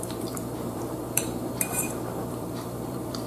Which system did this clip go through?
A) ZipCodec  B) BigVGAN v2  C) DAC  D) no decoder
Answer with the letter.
B